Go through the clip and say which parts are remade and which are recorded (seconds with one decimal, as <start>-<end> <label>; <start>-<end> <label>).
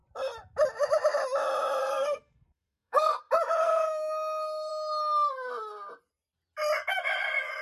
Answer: 0.0-1.8 recorded; 1.8-3.2 remade; 3.2-3.6 recorded; 3.6-4.7 remade; 4.7-7.6 recorded